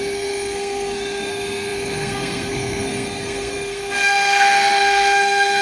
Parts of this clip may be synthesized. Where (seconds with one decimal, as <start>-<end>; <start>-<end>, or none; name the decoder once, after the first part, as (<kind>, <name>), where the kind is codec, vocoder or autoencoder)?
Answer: 0.0-5.6 (codec, SNAC)